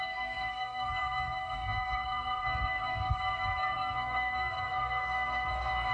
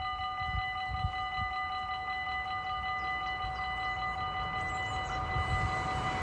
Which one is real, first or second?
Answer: second